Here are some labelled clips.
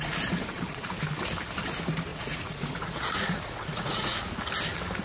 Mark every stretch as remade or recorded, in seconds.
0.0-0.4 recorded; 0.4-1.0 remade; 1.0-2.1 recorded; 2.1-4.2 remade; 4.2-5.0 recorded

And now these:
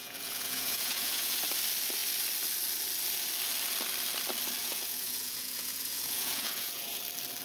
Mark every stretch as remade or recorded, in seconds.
0.0-1.4 remade; 1.4-4.6 recorded; 4.6-7.0 remade; 7.0-7.4 recorded

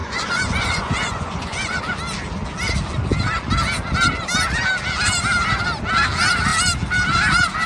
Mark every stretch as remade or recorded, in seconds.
0.0-1.8 remade; 1.8-7.7 recorded